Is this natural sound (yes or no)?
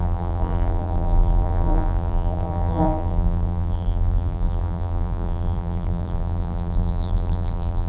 no